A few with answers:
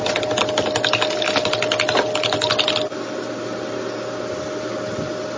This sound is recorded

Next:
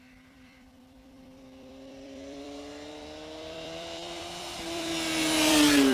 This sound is remade